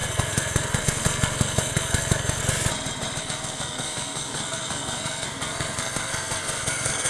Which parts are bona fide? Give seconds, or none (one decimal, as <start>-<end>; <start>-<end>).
2.4-3.2